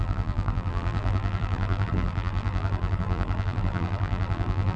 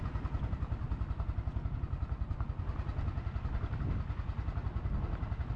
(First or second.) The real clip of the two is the second